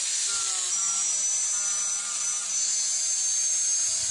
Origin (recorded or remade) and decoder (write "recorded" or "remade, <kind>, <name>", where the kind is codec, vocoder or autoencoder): recorded